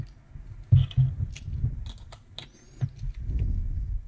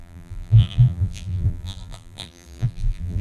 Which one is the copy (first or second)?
second